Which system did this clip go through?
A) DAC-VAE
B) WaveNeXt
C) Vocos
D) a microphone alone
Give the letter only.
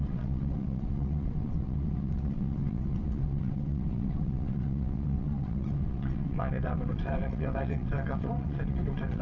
B